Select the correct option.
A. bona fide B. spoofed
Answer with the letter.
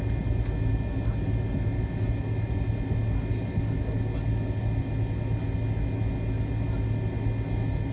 A